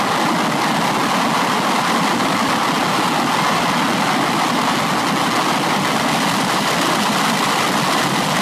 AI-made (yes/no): no